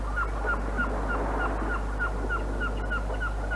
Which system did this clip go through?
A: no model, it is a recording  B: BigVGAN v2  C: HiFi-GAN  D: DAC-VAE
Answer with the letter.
A